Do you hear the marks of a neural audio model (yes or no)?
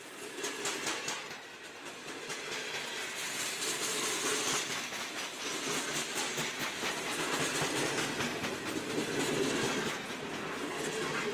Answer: no